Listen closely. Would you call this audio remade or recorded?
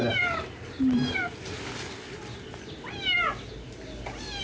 recorded